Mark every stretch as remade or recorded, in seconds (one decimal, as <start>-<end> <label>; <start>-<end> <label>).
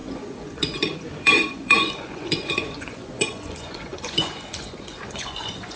0.0-5.8 remade